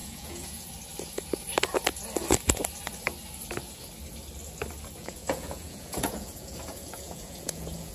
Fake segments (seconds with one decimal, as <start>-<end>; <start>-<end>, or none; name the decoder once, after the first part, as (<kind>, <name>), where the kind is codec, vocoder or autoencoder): 0.0-0.7 (vocoder, Vocos); 5.0-7.9